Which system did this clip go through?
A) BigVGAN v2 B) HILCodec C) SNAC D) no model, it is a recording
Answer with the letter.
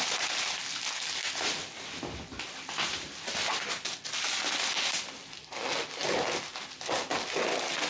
D